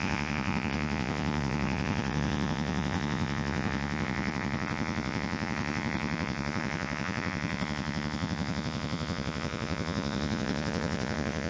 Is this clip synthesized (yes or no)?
yes